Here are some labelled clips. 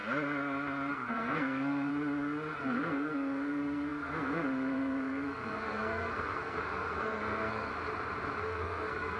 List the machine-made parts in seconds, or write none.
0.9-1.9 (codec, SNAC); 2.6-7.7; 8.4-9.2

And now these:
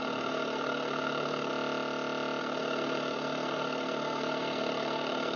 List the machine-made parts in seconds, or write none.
0.0-1.5 (codec, SNAC); 2.4-5.4

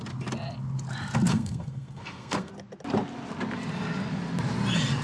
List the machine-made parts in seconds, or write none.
1.3-2.5 (codec, SNAC)